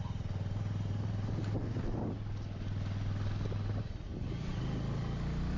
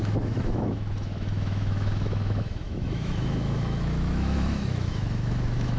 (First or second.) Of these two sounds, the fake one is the second